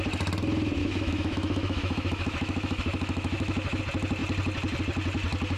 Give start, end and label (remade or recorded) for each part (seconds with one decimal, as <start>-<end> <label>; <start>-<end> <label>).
0.0-0.8 recorded; 0.8-3.8 remade; 3.8-5.6 recorded